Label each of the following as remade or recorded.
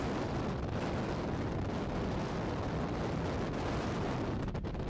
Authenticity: recorded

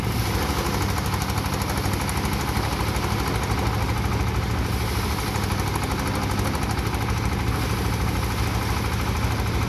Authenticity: recorded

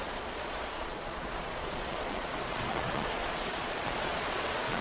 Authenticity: remade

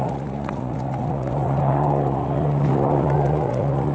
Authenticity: remade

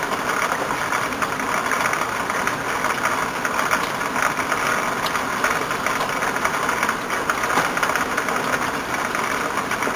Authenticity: recorded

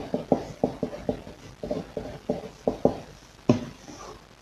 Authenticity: recorded